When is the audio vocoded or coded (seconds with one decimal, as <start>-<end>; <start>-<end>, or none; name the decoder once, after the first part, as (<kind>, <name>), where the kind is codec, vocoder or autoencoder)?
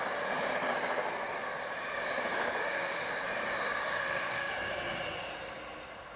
2.6-3.1 (autoencoder, DAC-VAE); 4.0-4.5